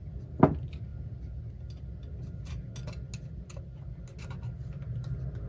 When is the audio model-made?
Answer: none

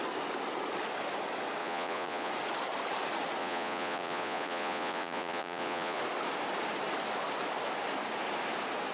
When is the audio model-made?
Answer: 1.6-2.3 (vocoder, Vocos); 3.4-6.0